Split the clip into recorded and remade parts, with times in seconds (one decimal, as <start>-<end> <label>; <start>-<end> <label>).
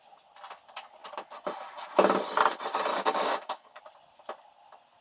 0.0-2.9 recorded; 2.9-3.8 remade; 3.8-5.0 recorded